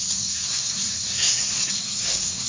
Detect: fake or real fake